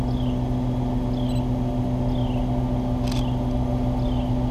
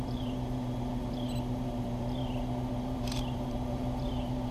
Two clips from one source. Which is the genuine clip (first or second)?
first